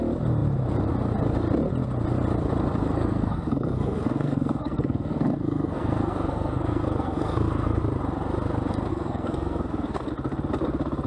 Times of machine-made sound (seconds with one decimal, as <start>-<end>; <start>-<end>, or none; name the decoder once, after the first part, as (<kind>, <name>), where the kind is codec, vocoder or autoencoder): 2.9-7.8 (codec, SNAC); 8.9-10.1